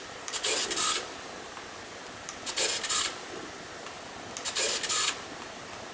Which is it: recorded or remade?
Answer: recorded